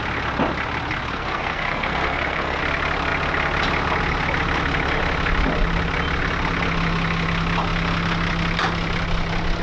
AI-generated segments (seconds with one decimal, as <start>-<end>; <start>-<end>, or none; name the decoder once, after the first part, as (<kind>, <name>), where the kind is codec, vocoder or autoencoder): 1.1-2.6 (codec, SNAC)